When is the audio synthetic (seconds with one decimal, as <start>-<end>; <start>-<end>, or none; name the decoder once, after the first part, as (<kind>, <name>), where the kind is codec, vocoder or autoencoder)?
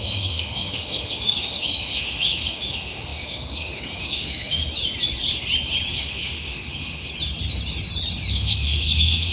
0.0-4.6 (autoencoder, DAC-VAE); 5.9-7.1; 8.3-9.3